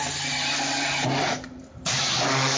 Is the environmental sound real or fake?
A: real